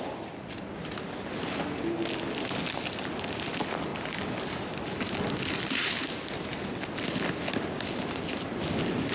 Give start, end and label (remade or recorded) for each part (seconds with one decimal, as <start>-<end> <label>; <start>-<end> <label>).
0.0-9.1 recorded